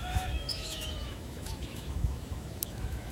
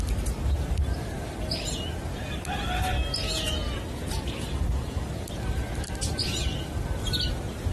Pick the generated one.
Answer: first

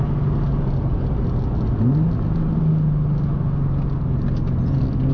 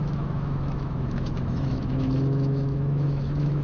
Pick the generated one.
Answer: second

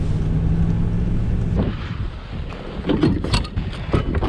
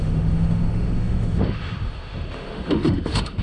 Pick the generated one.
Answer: second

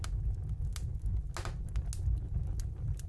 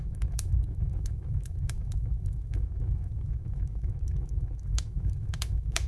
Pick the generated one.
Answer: second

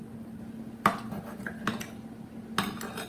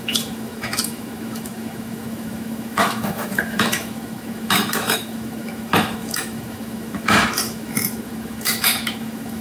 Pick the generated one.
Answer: second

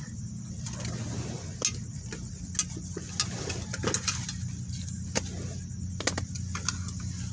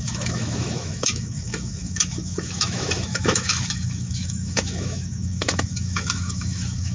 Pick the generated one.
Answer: second